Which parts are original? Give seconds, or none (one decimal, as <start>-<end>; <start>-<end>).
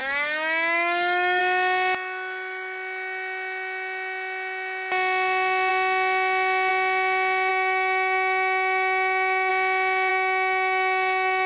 1.4-7.5; 9.5-10.1